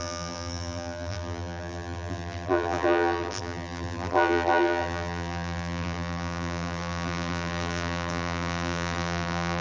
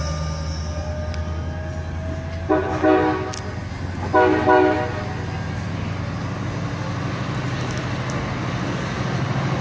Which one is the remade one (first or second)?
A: first